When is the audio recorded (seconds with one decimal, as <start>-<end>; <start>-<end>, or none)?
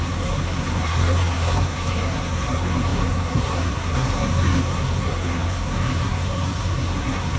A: none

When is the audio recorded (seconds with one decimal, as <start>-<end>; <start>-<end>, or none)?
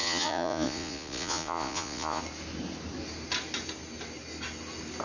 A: 2.2-5.0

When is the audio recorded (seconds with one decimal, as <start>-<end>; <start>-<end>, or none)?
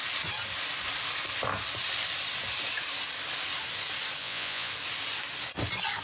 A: 0.0-4.2; 4.7-6.0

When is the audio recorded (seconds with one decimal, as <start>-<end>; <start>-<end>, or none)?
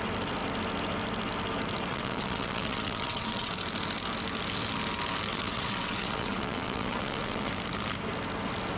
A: 0.0-1.9; 3.5-5.3; 7.5-8.8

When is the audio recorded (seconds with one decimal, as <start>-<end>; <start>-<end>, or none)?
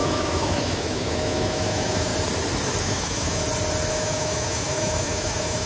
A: 2.1-2.8; 3.4-3.9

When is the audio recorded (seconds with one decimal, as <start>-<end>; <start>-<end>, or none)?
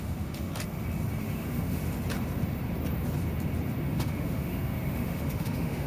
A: 0.5-1.2; 1.8-3.8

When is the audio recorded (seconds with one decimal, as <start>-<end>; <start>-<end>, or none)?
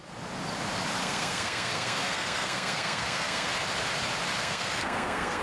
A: 0.0-1.0; 3.5-4.4